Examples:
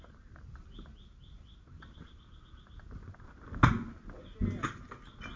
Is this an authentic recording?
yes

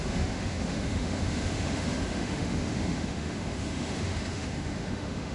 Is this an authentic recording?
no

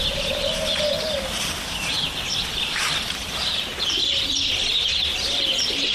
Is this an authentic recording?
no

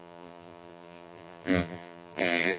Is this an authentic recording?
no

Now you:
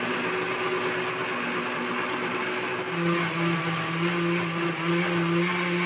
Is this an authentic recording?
yes